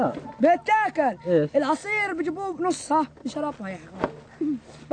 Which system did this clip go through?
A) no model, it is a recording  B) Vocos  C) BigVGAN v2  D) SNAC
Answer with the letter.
A